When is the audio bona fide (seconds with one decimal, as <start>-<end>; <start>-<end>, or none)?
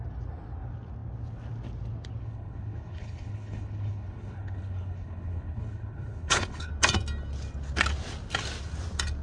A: 0.0-2.2; 6.7-9.2